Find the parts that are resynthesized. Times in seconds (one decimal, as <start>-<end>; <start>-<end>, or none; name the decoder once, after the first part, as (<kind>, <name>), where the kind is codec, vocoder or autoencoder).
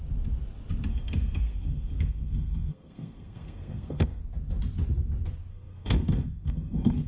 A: 0.9-4.2 (codec, SNAC); 5.5-7.1